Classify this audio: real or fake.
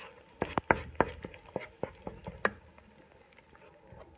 real